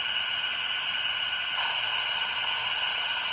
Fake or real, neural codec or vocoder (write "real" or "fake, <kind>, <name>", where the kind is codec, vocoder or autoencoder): real